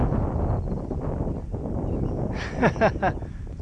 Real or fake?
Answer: real